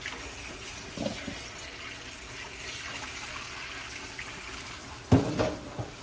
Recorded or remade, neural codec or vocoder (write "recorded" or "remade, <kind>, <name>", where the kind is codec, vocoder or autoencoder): recorded